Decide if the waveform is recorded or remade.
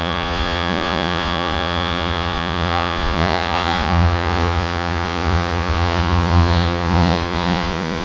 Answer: remade